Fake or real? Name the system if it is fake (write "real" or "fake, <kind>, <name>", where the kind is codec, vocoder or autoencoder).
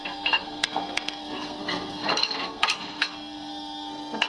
fake, codec, SNAC